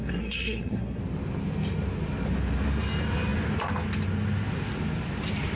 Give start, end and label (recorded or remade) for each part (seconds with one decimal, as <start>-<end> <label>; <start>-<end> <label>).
0.0-1.0 remade; 1.0-5.6 recorded